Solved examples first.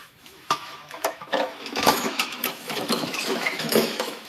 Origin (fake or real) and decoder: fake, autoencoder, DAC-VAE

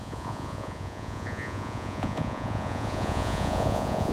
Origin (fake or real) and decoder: fake, vocoder, Vocos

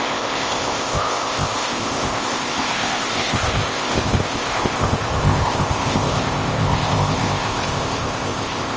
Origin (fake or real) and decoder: fake, codec, ZipCodec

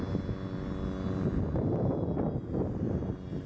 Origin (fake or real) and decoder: real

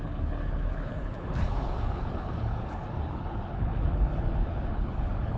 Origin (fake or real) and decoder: fake, codec, HILCodec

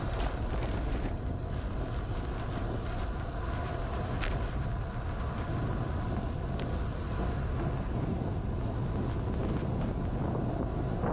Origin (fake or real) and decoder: real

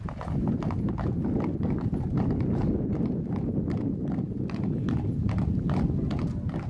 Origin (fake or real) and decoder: real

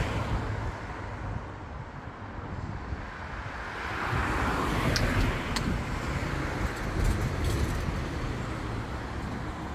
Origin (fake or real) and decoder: real